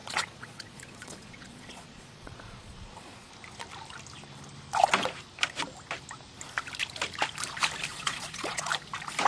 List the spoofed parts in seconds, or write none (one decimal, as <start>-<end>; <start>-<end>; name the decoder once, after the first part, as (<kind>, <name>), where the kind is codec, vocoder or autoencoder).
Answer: 0.0-3.3 (vocoder, Vocos); 7.9-8.7